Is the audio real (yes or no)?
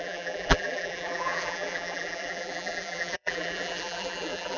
no